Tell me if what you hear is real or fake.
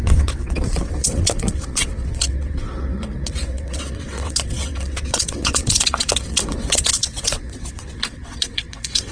fake